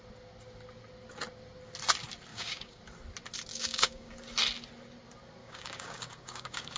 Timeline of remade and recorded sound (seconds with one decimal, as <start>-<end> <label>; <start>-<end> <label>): 0.0-2.3 recorded; 2.3-2.8 remade; 2.8-3.5 recorded; 3.5-4.1 remade; 4.1-5.4 recorded; 5.4-6.8 remade